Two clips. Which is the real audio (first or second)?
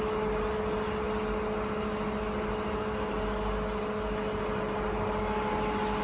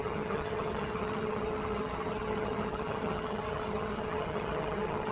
first